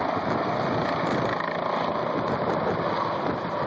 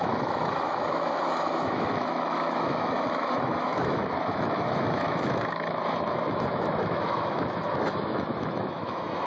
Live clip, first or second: first